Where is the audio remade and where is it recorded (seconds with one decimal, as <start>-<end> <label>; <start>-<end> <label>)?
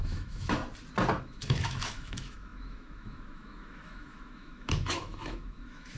0.0-0.6 remade; 0.6-1.2 recorded; 1.2-6.0 remade